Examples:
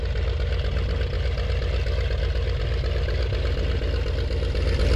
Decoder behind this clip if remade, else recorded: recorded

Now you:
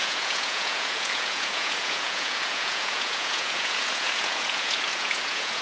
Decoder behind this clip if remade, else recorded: remade, vocoder, Vocos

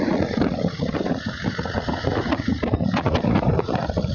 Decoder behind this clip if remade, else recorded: remade, vocoder, Vocos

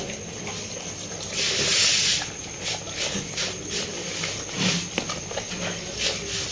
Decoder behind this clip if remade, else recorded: recorded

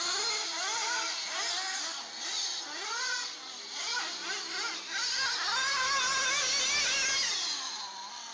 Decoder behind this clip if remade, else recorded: recorded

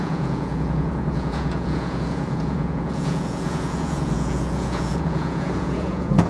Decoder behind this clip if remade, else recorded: remade, vocoder, Vocos